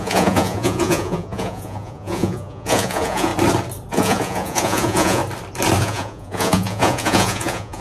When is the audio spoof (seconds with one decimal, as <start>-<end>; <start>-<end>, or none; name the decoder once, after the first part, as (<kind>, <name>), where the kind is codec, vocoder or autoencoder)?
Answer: 0.0-3.3 (vocoder, Vocos); 3.9-5.2; 5.8-7.8